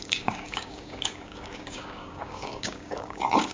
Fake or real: fake